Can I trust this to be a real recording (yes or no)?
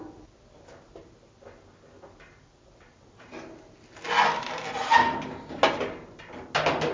yes